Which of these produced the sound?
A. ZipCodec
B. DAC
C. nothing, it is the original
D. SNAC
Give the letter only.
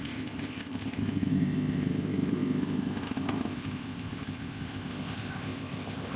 A